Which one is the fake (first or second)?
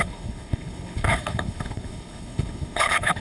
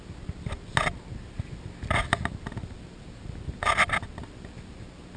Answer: first